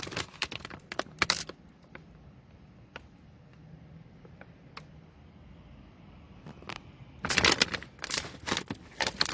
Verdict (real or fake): fake